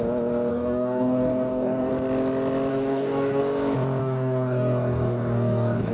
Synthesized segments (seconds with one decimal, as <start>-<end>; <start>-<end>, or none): 0.5-1.9; 2.7-3.4; 4.0-5.9

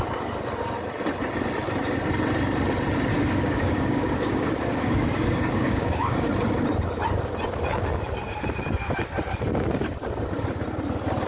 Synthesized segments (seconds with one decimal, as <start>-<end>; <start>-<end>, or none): 3.1-6.3